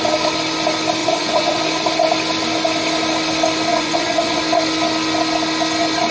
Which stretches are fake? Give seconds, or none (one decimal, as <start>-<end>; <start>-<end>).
1.0-1.6; 3.7-4.4